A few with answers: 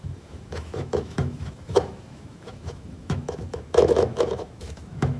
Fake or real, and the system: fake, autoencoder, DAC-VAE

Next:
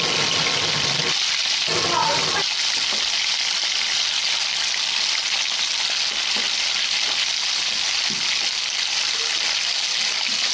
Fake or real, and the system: real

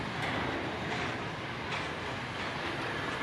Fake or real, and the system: real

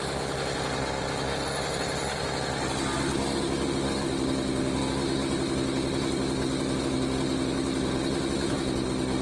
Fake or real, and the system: real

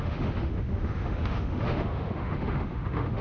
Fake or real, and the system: fake, autoencoder, DAC-VAE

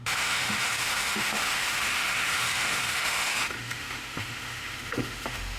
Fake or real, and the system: fake, autoencoder, DAC-VAE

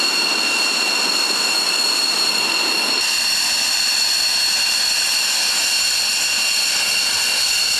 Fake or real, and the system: real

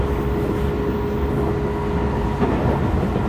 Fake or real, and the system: real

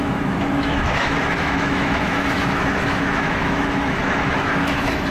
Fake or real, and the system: fake, autoencoder, DAC-VAE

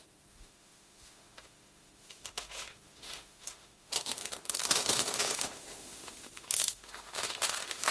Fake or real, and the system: fake, autoencoder, DAC-VAE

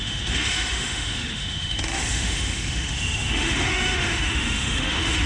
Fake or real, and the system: fake, autoencoder, DAC-VAE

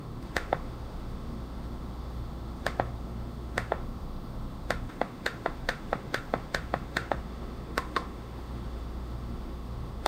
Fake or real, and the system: fake, autoencoder, DAC-VAE